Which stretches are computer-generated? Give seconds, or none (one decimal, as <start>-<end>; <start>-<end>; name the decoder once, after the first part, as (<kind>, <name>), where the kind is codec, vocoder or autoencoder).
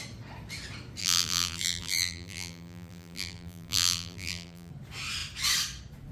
1.0-4.7 (vocoder, BigVGAN v2)